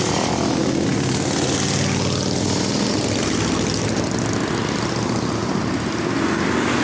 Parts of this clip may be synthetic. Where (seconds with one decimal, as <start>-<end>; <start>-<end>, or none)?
none